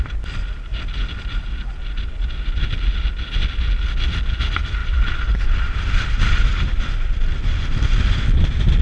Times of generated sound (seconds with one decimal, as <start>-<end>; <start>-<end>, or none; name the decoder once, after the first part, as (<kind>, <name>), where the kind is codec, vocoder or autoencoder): 4.8-6.8 (vocoder, BigVGAN v2)

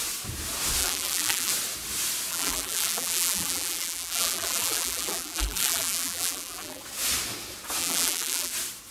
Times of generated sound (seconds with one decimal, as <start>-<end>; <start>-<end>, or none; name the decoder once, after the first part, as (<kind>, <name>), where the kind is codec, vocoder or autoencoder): 0.8-1.5 (vocoder, BigVGAN v2); 2.3-6.8; 7.8-8.5

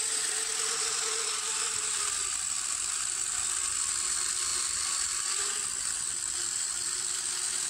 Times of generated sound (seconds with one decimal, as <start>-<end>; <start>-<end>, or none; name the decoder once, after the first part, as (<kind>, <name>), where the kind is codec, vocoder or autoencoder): none

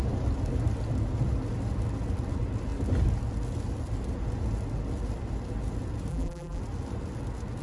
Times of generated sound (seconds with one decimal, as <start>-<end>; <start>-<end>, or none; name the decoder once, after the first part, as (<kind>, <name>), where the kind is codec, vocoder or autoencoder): 6.1-6.6 (vocoder, BigVGAN v2)